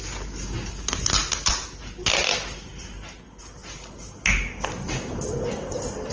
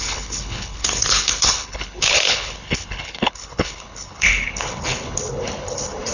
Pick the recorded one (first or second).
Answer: first